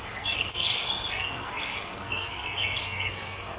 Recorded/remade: remade